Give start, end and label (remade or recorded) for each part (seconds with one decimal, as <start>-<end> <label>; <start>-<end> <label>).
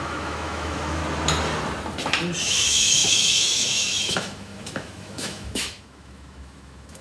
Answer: 0.0-1.0 remade; 1.0-2.4 recorded; 2.4-7.0 remade